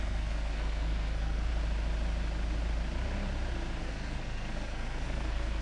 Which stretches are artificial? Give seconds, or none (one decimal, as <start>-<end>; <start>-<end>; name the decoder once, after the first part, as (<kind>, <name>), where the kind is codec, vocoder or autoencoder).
0.0-1.5 (codec, SNAC); 3.8-5.6

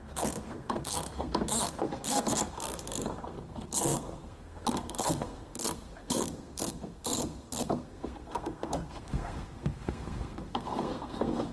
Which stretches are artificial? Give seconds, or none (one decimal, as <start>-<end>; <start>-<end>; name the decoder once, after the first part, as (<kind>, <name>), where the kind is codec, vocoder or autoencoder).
0.0-11.5 (codec, SNAC)